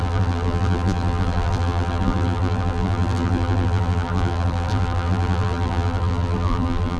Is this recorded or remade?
remade